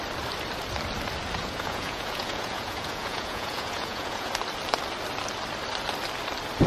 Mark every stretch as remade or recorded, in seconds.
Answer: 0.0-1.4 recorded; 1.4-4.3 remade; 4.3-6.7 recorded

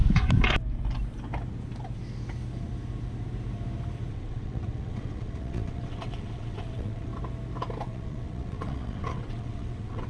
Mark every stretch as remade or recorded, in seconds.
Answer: 0.0-4.1 recorded; 4.1-7.1 remade; 7.1-7.8 recorded; 7.8-10.1 remade

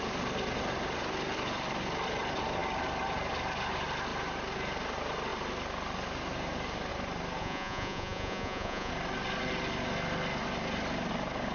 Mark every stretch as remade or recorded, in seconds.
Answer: 0.0-7.4 recorded; 7.4-8.9 remade; 8.9-11.5 recorded

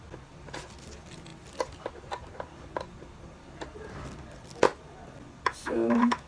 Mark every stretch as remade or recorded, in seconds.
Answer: 0.0-5.6 recorded; 5.6-6.3 remade

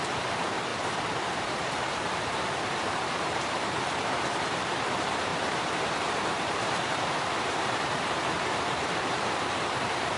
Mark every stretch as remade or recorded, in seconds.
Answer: 0.0-10.2 remade

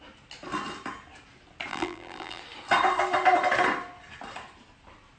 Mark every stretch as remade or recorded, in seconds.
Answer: 0.0-1.7 recorded; 1.7-2.4 remade; 2.4-5.2 recorded